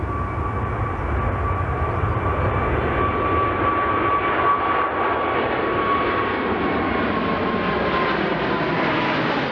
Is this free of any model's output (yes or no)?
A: yes